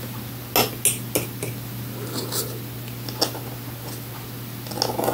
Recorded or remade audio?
recorded